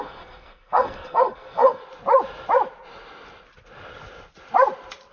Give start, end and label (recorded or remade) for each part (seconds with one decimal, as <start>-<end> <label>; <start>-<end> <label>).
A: 0.0-1.8 remade; 1.8-5.1 recorded